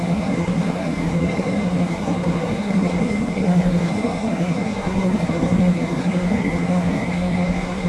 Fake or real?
fake